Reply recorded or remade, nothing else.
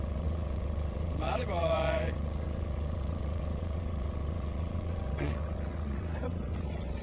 remade